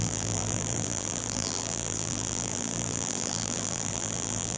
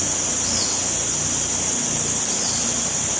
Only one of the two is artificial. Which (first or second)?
first